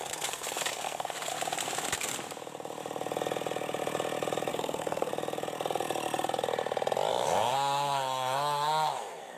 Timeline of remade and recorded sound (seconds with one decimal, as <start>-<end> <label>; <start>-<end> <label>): 0.0-1.3 remade; 1.3-4.5 recorded; 4.5-5.1 remade; 5.1-7.1 recorded; 7.1-9.4 remade